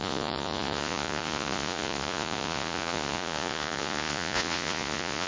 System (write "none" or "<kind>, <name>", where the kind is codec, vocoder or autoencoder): vocoder, Vocos